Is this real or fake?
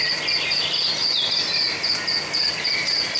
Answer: real